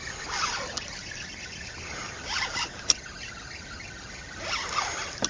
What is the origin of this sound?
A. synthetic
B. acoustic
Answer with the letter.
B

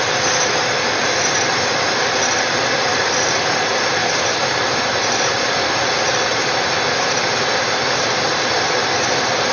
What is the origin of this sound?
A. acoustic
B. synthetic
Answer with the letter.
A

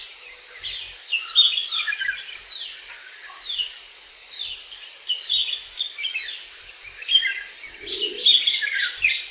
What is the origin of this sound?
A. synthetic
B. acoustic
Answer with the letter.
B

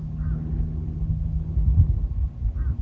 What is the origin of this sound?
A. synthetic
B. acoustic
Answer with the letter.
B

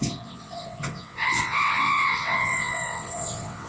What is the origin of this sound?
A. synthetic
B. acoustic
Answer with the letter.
A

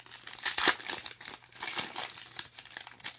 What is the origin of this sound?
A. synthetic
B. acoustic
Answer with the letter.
B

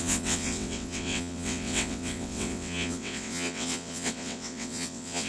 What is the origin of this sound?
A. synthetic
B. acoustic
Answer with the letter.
A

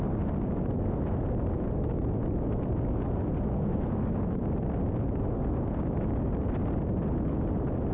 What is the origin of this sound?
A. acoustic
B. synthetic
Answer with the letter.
A